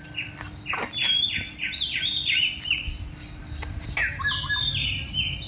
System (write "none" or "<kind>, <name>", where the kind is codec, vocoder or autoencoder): none